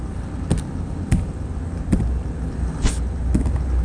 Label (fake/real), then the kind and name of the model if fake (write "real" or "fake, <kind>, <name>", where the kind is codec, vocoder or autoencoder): real